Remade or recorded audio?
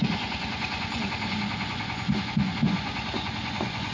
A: remade